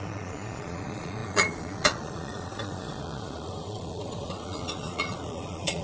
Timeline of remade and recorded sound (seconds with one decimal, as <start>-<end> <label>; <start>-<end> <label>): 0.0-5.8 remade